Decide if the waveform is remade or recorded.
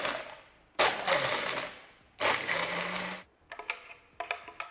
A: recorded